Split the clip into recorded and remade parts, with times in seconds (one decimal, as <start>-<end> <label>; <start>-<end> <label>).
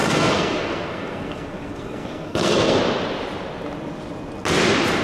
0.0-2.8 remade; 2.8-5.0 recorded